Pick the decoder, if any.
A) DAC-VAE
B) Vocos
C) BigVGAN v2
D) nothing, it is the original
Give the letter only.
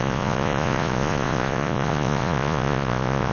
B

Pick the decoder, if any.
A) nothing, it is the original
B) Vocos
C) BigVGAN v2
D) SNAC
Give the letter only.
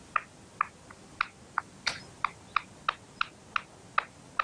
A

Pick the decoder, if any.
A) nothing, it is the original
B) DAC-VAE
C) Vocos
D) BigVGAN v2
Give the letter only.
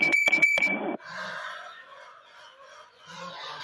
C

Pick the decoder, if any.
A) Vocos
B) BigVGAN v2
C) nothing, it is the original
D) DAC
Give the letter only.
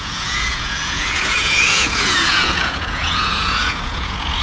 A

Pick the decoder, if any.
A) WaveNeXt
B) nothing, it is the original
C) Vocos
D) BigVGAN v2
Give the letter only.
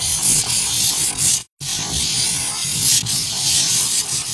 B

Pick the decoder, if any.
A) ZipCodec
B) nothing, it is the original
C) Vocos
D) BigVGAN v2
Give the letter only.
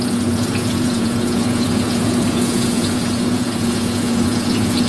C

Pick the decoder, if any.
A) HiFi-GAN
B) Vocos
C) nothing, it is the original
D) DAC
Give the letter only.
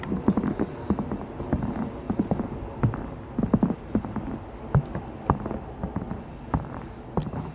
C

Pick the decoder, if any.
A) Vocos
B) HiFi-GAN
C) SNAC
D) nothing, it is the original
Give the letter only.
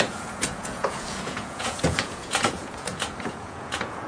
A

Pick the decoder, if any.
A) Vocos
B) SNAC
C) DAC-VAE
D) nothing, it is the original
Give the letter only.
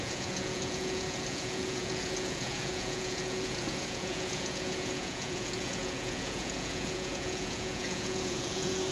A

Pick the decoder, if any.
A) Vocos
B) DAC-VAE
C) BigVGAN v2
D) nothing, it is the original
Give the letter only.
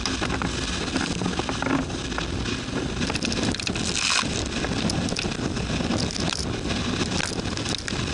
D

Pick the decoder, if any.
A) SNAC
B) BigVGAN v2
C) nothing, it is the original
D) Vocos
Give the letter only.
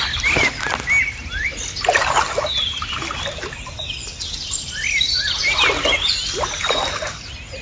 C